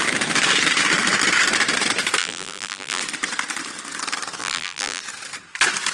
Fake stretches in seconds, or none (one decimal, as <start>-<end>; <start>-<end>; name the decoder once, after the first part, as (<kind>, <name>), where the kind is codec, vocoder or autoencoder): 2.2-3.0 (vocoder, BigVGAN v2); 4.4-5.0